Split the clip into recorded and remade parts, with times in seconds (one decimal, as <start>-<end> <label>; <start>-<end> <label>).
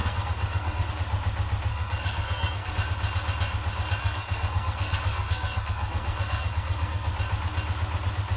0.0-0.9 remade; 0.9-1.7 recorded; 1.7-2.7 remade; 2.7-4.0 recorded; 4.0-7.1 remade; 7.1-8.4 recorded